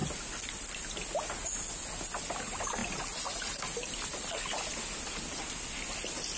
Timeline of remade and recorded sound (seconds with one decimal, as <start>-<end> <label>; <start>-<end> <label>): 0.0-6.4 recorded